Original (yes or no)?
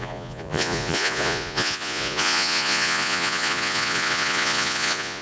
no